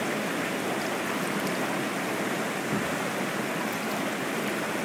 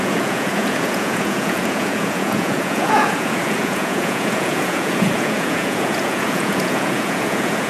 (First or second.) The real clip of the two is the first